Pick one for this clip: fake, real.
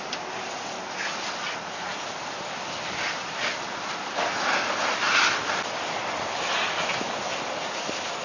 real